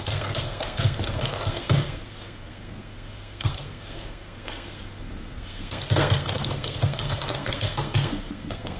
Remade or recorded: remade